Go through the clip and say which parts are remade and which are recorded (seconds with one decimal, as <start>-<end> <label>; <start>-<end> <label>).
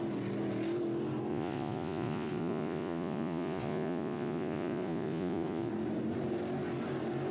0.0-1.3 recorded; 1.3-5.7 remade; 5.7-7.3 recorded